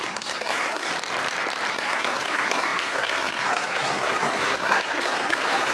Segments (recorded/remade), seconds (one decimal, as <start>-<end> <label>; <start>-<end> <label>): 0.0-0.9 remade; 0.9-1.7 recorded; 1.7-5.7 remade